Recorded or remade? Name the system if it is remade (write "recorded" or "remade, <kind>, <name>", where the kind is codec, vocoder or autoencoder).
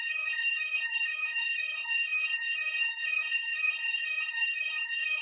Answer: remade, codec, HILCodec